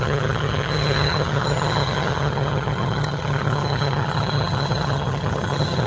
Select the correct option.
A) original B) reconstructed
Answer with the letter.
B